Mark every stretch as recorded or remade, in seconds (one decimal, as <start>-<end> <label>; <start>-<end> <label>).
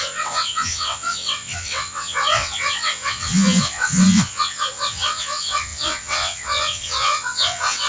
0.0-7.9 remade